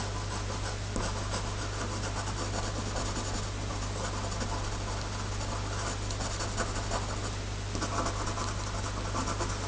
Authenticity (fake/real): real